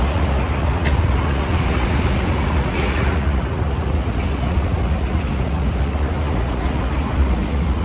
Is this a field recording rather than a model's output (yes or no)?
no